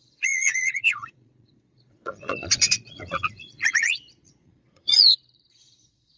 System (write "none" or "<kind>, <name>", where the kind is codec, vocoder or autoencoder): vocoder, Vocos